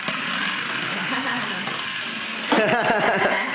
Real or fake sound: real